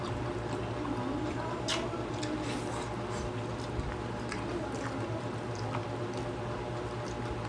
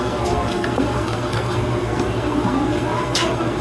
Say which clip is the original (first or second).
first